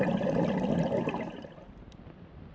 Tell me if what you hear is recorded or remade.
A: recorded